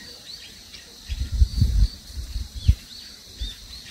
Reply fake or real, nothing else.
fake